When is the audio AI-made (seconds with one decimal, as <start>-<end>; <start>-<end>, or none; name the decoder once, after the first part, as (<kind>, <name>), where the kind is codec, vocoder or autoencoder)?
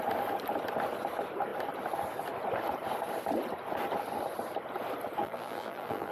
5.2-6.1 (vocoder, BigVGAN v2)